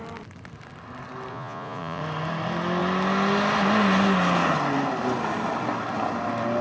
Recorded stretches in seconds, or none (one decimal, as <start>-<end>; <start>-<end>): 0.0-1.3; 2.0-6.6